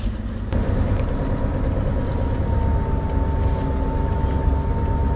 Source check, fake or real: real